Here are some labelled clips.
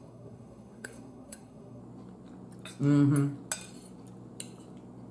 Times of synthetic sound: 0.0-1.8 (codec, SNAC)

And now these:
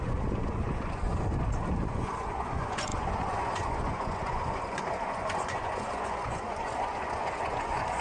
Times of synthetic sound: 0.0-1.1 (vocoder, Vocos); 1.9-8.0

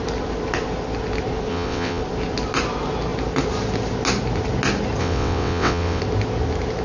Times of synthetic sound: 1.5-2.0 (vocoder, WaveNeXt); 5.0-6.0